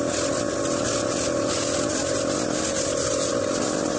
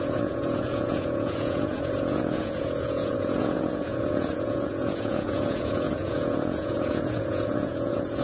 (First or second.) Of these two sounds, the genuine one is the first